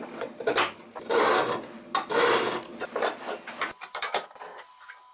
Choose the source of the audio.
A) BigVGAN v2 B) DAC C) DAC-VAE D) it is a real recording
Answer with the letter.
D